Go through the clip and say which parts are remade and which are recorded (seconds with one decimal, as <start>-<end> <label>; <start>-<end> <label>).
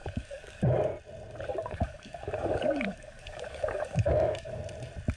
0.0-0.6 remade; 0.6-1.5 recorded; 1.5-4.6 remade; 4.6-5.2 recorded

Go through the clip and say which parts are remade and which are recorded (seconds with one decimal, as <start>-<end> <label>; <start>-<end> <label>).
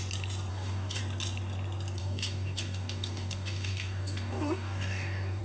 0.0-0.5 recorded; 0.5-1.0 remade; 1.0-2.0 recorded; 2.0-5.4 remade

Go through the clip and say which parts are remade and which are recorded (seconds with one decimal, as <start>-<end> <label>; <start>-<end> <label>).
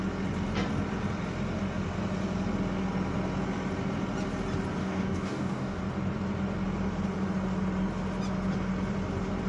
0.0-4.8 recorded; 4.8-5.8 remade; 5.8-9.5 recorded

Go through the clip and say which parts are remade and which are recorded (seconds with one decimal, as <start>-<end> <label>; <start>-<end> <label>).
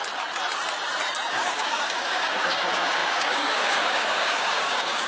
0.0-1.3 recorded; 1.3-5.1 remade